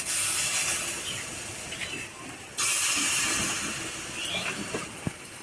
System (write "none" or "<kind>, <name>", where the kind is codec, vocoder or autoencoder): none